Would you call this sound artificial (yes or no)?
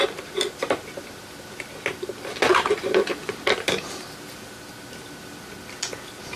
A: no